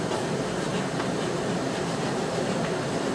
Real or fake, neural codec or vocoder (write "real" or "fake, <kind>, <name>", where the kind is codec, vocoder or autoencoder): real